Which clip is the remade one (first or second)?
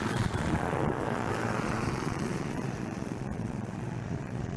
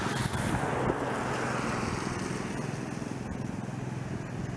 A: first